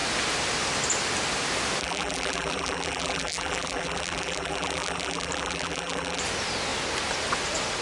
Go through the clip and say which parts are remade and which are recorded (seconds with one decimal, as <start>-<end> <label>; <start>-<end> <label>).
0.0-1.8 recorded; 1.8-6.2 remade; 6.2-7.8 recorded